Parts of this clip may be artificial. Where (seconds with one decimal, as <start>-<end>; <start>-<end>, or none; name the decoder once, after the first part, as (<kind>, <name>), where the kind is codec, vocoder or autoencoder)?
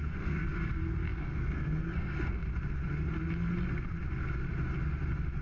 0.0-2.5 (codec, SNAC)